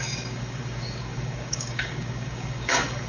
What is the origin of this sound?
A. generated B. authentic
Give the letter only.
A